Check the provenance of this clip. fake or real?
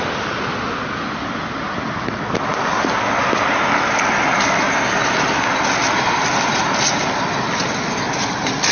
real